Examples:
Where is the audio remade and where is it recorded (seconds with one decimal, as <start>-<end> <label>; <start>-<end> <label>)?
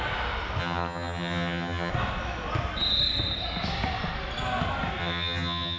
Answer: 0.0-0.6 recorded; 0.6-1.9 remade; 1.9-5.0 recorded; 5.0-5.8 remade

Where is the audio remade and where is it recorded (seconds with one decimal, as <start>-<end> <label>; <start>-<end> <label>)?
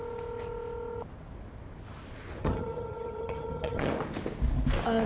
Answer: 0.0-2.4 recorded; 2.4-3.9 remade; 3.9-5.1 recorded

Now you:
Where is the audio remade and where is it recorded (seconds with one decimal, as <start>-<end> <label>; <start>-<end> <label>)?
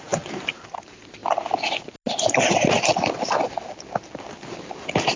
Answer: 0.0-5.2 recorded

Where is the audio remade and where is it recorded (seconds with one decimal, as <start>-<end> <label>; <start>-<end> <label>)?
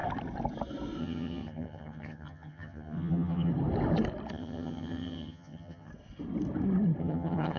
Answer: 0.0-1.0 recorded; 1.0-3.5 remade; 3.5-4.3 recorded; 4.3-5.9 remade; 5.9-7.0 recorded; 7.0-7.6 remade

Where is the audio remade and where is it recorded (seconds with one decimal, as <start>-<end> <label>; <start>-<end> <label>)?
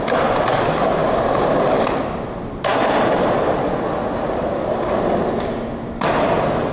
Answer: 0.0-6.7 recorded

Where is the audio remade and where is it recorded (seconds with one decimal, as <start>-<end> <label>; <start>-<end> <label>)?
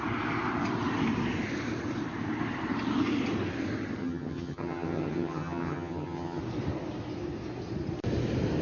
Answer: 0.0-4.0 recorded; 4.0-6.4 remade; 6.4-8.6 recorded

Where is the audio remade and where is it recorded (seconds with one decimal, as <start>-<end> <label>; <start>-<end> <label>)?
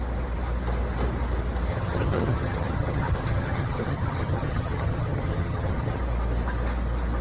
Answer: 0.0-1.7 recorded; 1.7-6.0 remade; 6.0-7.2 recorded